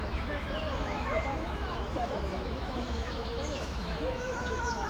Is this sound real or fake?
fake